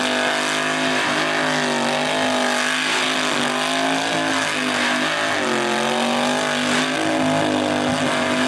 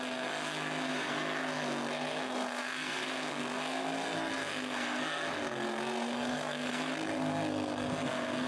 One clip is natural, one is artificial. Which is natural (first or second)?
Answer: first